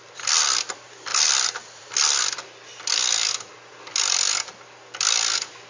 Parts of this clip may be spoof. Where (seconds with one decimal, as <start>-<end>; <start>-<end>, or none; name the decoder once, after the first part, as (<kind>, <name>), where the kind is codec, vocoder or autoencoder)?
1.1-1.8 (vocoder, BigVGAN v2)